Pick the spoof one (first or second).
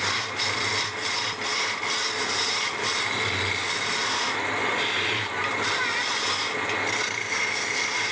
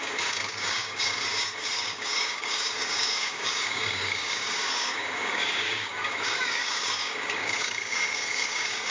second